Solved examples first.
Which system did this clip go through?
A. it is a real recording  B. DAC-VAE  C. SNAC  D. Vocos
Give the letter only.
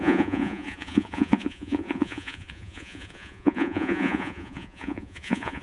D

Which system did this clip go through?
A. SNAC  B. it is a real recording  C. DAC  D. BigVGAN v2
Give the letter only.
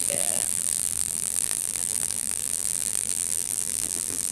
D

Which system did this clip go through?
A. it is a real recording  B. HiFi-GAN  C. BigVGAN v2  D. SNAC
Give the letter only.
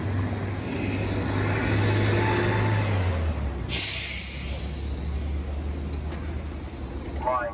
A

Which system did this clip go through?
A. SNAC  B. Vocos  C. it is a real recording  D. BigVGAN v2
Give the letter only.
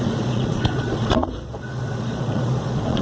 B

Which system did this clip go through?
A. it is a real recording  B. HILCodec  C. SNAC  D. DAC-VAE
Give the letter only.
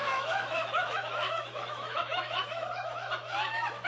D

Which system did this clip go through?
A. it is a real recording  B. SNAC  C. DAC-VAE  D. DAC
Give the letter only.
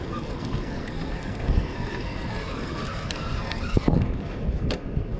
B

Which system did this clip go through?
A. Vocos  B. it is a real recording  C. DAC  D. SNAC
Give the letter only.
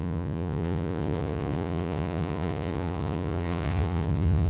A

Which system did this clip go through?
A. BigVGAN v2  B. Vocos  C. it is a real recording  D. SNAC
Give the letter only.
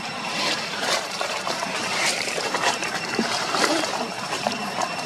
A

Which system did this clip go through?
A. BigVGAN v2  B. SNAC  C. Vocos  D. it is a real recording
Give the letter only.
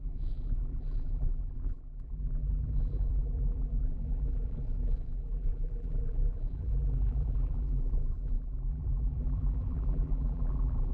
A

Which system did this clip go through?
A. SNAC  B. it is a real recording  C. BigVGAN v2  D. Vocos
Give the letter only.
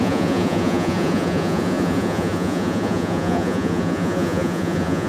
D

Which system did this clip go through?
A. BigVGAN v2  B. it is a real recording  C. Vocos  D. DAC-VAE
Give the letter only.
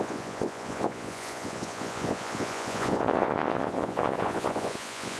C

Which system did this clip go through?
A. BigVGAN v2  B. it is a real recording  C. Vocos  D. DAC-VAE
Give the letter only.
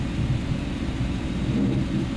A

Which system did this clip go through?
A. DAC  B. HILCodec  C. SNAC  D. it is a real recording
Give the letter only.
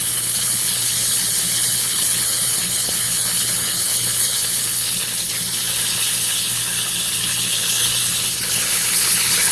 B